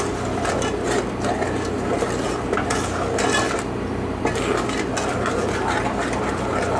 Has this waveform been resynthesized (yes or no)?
no